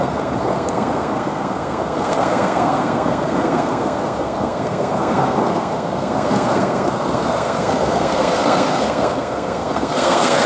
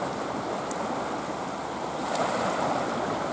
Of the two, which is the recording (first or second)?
second